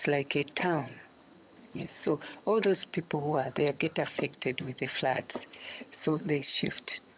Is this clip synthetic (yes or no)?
yes